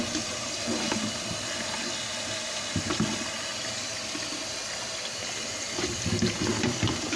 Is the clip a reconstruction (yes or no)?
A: no